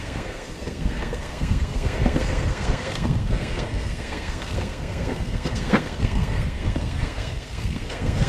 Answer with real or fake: fake